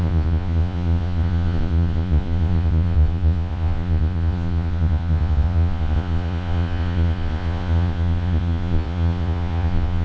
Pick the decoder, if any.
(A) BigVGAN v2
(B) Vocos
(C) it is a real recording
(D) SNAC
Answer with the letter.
B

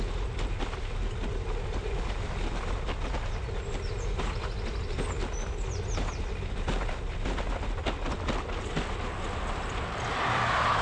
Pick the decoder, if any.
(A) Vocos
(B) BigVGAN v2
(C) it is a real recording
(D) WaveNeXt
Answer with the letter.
C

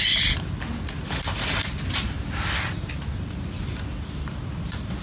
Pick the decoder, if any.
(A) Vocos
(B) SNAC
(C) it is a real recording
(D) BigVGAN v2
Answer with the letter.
C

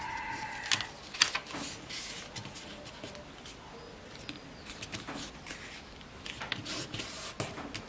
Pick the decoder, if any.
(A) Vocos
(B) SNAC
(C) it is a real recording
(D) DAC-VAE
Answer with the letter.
C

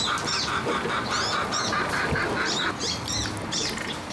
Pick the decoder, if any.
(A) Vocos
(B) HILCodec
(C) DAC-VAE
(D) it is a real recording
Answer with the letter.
D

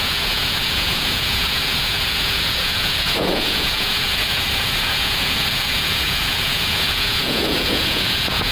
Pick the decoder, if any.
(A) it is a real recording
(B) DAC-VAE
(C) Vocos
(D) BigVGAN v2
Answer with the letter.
C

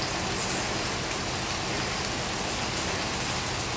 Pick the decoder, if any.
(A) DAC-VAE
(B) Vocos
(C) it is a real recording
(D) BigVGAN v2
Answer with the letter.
C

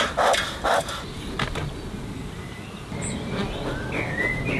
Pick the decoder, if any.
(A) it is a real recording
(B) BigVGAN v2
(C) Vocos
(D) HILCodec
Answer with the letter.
A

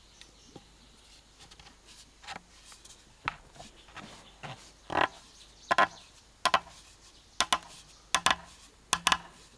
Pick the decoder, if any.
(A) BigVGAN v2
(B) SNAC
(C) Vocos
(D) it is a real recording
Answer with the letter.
D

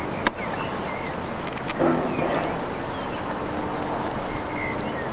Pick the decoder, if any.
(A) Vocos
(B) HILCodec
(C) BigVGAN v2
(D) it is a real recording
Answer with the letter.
D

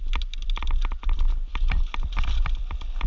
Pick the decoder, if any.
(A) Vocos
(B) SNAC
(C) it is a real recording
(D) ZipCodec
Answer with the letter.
C